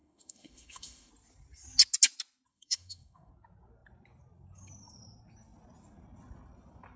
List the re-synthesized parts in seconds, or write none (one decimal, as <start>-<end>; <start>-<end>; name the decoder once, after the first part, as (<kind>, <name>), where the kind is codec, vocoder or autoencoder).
0.0-1.1 (autoencoder, DAC-VAE); 2.5-3.3